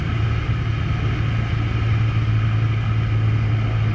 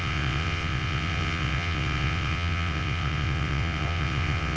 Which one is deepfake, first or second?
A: second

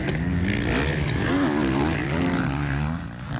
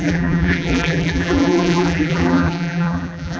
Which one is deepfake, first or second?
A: second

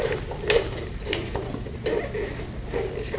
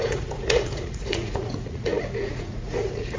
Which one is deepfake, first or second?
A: second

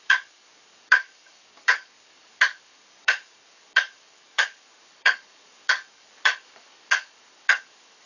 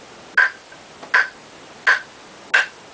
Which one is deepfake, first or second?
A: first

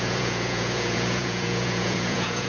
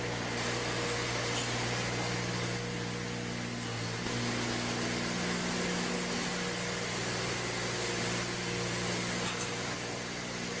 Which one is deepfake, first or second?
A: first